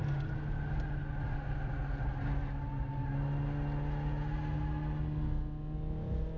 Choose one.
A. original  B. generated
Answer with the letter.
A